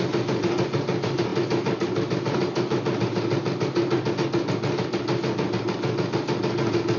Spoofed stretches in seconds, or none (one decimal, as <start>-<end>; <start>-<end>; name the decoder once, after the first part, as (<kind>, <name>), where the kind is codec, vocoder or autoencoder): none